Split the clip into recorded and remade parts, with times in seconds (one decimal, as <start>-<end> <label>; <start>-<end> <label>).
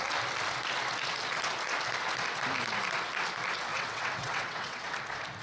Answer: 0.0-3.7 recorded; 3.7-4.9 remade; 4.9-5.4 recorded